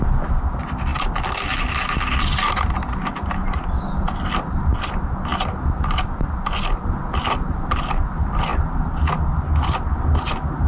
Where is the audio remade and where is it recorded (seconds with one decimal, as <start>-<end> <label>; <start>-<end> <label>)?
0.0-10.7 recorded